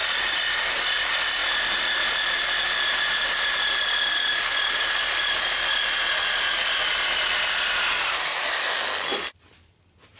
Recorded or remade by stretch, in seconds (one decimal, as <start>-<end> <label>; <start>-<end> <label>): 0.0-0.8 remade; 0.8-8.3 recorded; 8.3-8.8 remade; 8.8-10.2 recorded